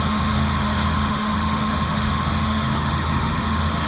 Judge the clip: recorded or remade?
remade